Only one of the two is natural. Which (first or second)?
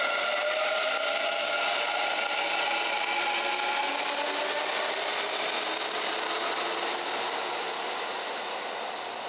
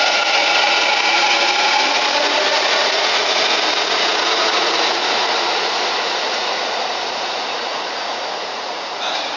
first